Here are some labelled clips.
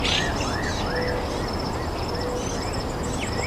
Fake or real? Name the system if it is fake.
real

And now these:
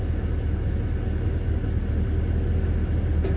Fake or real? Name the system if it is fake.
real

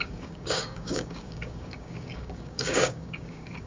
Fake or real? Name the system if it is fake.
fake, codec, DAC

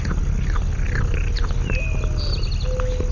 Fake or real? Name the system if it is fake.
real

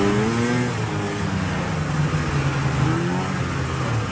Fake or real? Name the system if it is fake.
real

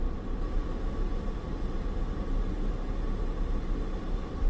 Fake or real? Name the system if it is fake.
real